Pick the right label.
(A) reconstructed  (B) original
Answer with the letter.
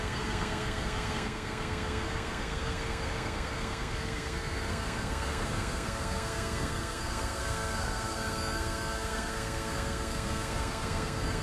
A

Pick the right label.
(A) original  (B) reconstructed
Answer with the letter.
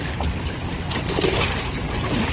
A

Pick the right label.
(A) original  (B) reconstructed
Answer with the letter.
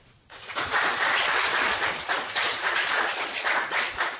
B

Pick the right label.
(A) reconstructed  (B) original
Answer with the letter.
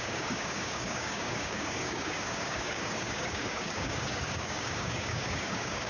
A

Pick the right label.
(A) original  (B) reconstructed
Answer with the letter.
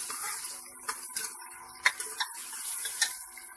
A